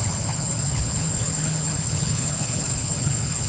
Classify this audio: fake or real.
fake